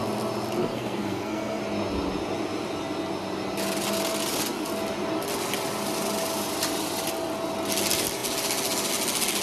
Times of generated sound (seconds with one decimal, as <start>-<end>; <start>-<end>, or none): 0.6-1.6